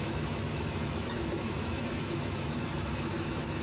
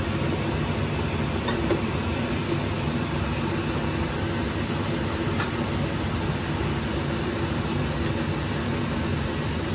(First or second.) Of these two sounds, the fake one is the first